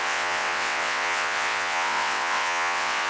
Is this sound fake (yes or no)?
yes